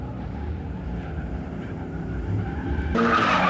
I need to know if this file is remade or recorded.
remade